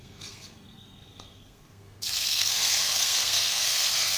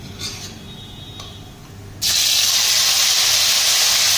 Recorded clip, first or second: second